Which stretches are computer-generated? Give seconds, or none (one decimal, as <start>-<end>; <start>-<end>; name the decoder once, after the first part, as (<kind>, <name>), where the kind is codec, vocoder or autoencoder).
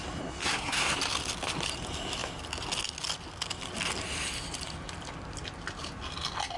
0.4-0.9 (codec, SNAC)